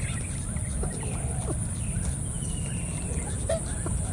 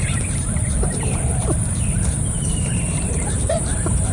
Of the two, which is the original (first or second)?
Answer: first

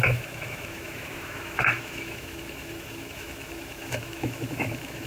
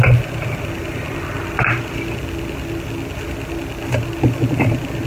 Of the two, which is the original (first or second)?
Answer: second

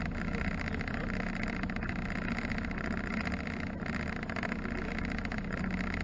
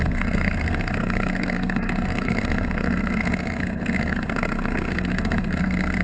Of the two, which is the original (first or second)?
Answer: first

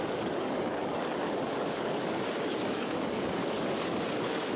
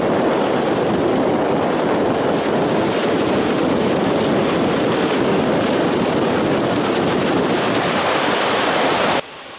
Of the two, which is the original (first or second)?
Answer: second